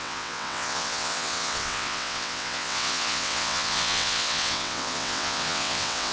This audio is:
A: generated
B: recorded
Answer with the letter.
A